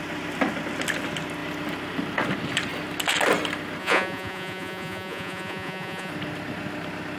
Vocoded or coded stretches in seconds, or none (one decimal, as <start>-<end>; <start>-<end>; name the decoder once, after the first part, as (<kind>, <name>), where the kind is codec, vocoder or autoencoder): 3.8-6.1 (vocoder, Vocos)